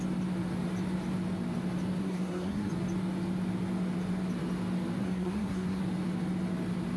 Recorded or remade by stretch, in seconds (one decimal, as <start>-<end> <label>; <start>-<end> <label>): 0.0-2.0 recorded; 2.0-2.7 remade; 2.7-5.0 recorded; 5.0-5.8 remade; 5.8-7.0 recorded